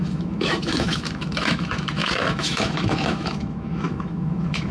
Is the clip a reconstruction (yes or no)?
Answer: yes